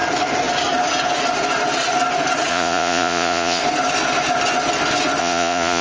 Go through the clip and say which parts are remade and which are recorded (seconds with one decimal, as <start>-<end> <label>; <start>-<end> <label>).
0.0-2.5 recorded; 2.5-3.6 remade; 3.6-5.2 recorded; 5.2-5.8 remade